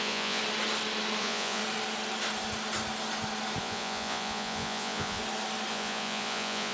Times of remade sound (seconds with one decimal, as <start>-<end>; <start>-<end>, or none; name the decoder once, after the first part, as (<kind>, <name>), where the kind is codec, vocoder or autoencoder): 0.0-0.4 (vocoder, Vocos); 1.2-1.6; 3.6-5.2; 5.7-6.7